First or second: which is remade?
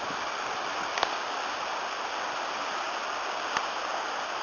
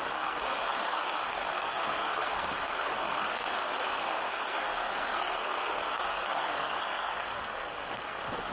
second